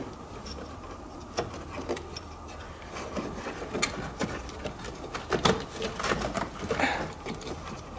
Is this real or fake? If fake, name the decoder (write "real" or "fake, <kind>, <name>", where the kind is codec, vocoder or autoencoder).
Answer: real